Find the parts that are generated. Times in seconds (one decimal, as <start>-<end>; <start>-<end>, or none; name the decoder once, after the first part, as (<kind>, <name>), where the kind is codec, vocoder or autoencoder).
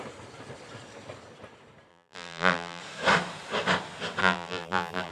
1.9-2.8 (vocoder, BigVGAN v2); 4.2-5.1